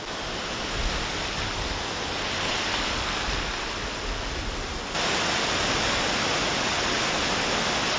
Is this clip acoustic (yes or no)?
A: yes